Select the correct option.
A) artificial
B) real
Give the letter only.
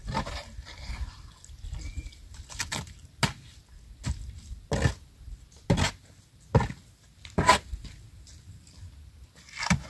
B